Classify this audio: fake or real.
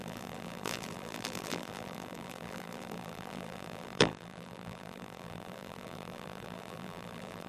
fake